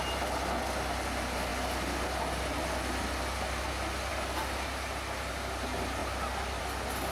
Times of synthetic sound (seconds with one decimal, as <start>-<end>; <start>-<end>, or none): none